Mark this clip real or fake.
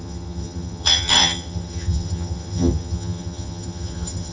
fake